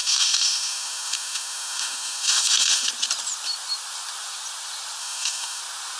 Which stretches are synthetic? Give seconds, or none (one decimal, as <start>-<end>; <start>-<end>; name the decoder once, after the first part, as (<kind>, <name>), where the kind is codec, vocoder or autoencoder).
0.0-2.9 (autoencoder, DAC-VAE); 5.0-5.6